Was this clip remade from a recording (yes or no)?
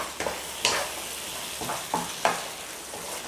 no